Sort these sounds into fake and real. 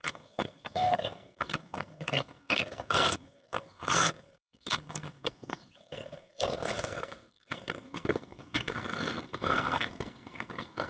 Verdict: fake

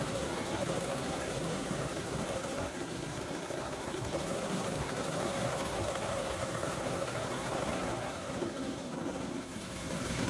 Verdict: fake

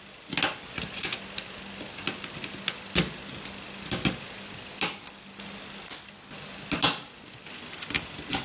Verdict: real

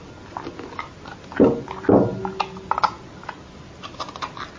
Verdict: real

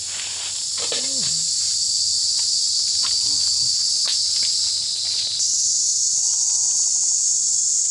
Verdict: real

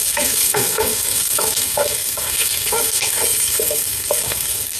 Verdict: fake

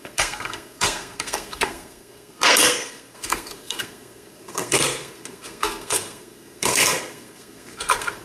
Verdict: fake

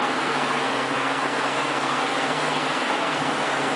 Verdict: fake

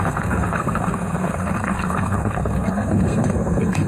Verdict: fake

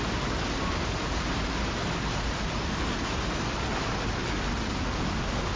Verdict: real